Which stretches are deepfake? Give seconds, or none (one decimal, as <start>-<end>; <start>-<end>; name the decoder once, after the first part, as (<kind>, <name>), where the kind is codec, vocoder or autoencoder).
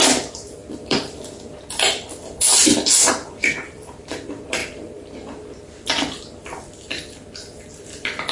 0.0-4.6 (vocoder, BigVGAN v2); 7.7-8.3